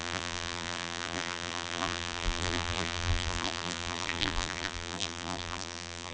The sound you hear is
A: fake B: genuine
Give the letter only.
A